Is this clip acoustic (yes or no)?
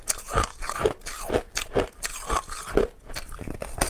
yes